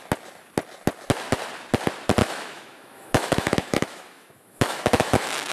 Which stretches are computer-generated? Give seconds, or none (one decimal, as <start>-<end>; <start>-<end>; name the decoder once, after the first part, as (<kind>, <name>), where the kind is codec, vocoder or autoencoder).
2.2-5.5 (autoencoder, DAC-VAE)